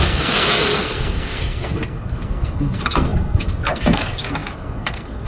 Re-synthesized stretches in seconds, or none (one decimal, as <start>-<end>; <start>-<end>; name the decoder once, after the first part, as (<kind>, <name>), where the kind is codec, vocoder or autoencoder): 0.0-5.3 (codec, SNAC)